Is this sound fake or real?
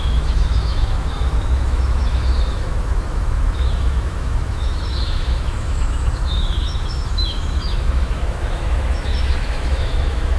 fake